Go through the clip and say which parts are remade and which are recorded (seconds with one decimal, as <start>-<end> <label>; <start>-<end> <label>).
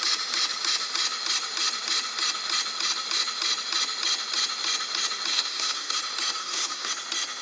0.0-5.3 recorded; 5.3-6.0 remade; 6.0-6.4 recorded; 6.4-6.9 remade; 6.9-7.4 recorded